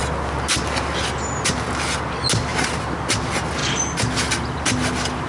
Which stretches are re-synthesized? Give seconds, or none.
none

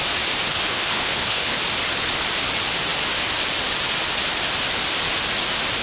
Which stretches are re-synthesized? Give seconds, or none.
0.5-1.6 (codec, HILCodec)

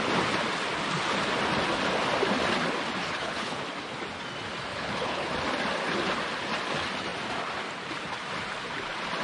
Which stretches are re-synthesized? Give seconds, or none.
3.0-3.6 (codec, HILCodec); 4.7-5.3

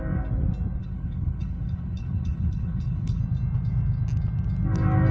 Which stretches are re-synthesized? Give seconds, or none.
0.8-3.2 (codec, HILCodec)

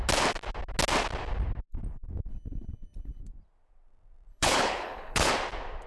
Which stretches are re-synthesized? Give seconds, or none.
2.3-3.2 (codec, HILCodec); 4.3-5.3